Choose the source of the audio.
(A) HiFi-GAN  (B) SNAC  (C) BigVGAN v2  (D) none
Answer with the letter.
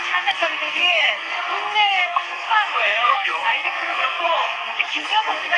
B